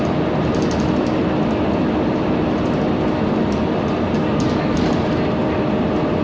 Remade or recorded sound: recorded